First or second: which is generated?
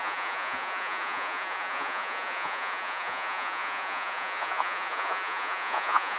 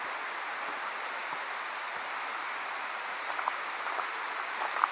first